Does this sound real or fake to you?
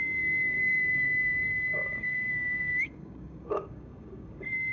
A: fake